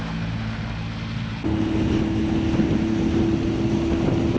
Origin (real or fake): real